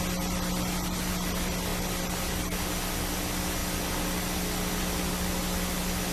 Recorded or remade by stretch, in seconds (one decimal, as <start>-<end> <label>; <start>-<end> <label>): 0.0-6.1 recorded